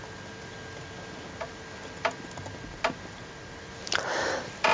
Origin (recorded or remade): recorded